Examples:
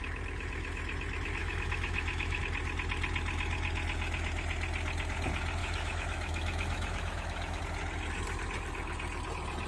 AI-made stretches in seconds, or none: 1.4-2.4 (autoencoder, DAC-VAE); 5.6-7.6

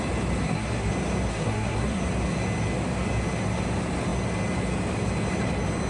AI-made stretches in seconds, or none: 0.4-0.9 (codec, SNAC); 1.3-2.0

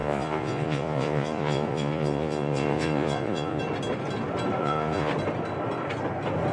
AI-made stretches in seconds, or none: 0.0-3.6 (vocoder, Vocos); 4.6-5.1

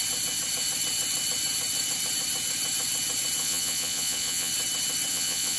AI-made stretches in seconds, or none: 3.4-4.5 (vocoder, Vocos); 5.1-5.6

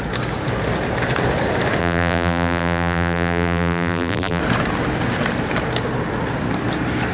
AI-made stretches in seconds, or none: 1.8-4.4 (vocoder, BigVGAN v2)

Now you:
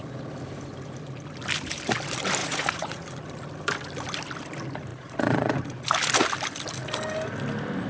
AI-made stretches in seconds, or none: 2.4-3.1 (vocoder, Vocos); 4.9-5.6

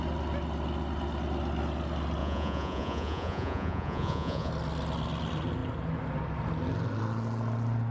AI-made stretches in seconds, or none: 2.2-4.5 (vocoder, Vocos)